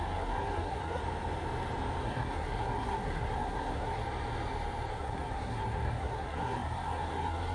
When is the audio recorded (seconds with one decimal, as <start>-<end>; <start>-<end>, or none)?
1.0-2.0; 4.0-4.9